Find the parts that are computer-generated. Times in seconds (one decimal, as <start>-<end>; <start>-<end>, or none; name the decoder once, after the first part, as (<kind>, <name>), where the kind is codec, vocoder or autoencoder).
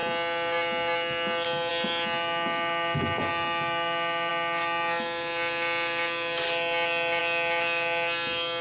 none